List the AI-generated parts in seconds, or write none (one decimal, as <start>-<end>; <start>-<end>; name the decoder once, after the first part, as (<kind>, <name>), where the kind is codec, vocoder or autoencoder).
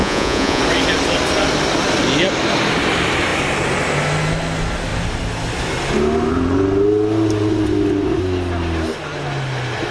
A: 0.0-0.6 (vocoder, Vocos)